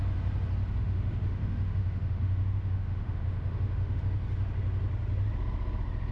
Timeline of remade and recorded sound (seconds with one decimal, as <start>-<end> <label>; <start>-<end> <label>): 0.0-0.8 recorded; 0.8-4.0 remade; 4.0-6.1 recorded